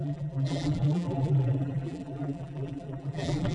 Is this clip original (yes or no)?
no